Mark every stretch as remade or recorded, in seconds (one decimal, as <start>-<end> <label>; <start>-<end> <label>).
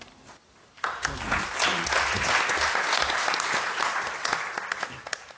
0.0-5.4 recorded